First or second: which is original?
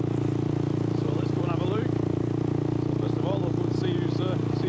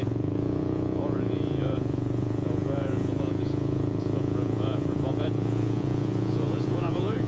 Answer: first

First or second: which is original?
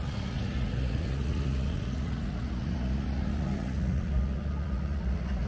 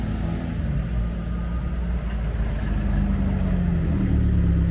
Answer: second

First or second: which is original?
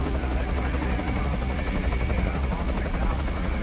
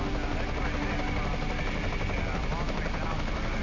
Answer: second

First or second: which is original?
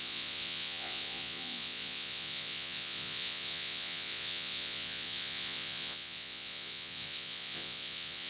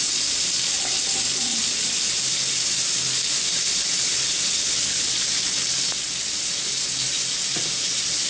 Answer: second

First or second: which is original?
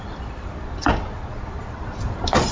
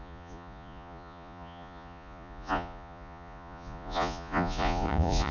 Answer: first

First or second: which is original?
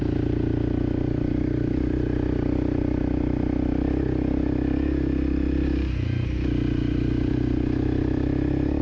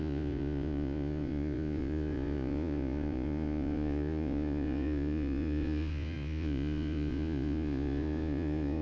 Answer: first